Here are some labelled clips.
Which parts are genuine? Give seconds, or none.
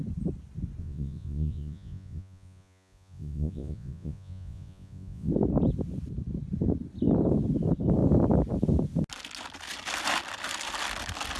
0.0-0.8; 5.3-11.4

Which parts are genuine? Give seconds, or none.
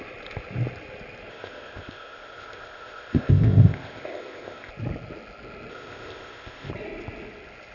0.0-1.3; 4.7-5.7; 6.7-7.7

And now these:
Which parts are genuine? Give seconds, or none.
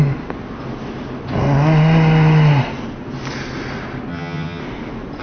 0.0-4.1; 4.6-5.2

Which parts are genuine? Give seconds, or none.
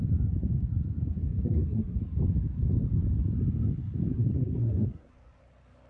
0.0-1.2; 2.0-4.1; 5.1-5.9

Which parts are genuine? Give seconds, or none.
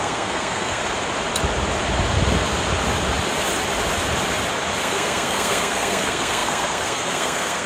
0.8-4.8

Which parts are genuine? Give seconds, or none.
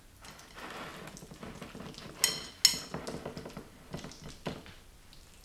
0.0-5.4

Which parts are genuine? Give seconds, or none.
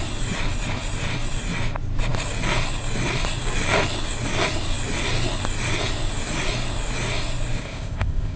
0.0-7.6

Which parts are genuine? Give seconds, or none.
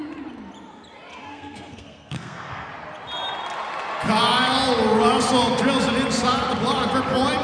0.0-1.3; 2.7-7.4